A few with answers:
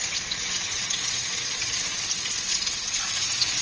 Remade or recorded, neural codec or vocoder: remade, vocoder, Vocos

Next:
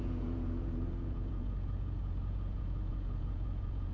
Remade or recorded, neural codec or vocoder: remade, vocoder, Vocos